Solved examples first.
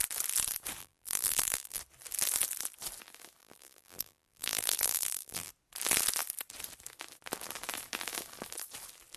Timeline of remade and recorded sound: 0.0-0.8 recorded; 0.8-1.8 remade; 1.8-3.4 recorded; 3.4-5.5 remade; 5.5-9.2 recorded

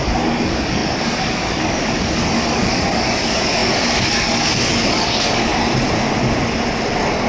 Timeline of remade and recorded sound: 0.0-5.5 remade; 5.5-7.3 recorded

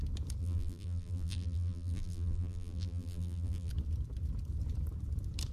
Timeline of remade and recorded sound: 0.0-0.4 recorded; 0.4-3.7 remade; 3.7-5.5 recorded

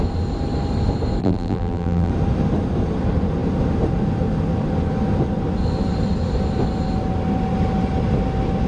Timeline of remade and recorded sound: 0.0-1.2 recorded; 1.2-2.1 remade; 2.1-8.7 recorded

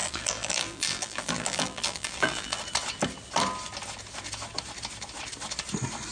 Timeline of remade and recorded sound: 0.0-2.6 remade; 2.6-6.1 recorded

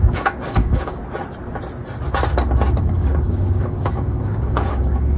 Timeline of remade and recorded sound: 0.0-1.0 remade; 1.0-2.8 recorded; 2.8-5.2 remade

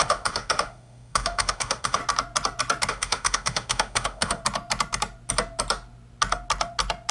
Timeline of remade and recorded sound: 0.0-2.0 remade; 2.0-2.9 recorded; 2.9-4.4 remade; 4.4-7.1 recorded

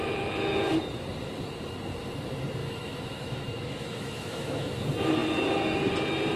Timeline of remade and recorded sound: 0.0-2.6 recorded; 2.6-4.8 remade; 4.8-6.4 recorded